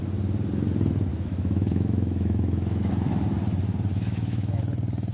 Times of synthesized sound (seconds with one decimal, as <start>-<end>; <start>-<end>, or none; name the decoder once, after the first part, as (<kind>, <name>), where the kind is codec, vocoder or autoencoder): 1.1-2.9 (autoencoder, DAC-VAE); 3.9-4.6